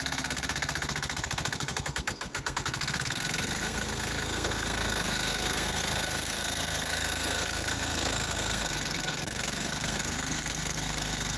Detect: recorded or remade remade